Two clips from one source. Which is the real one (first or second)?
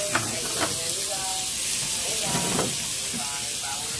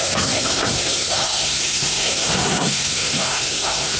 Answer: first